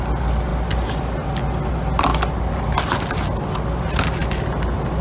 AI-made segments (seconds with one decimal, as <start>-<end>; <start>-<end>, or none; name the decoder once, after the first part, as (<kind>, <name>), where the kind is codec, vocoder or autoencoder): none